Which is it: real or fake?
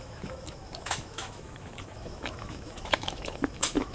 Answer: fake